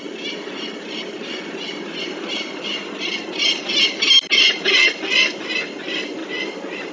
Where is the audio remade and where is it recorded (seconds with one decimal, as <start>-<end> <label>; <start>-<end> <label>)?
0.0-6.9 recorded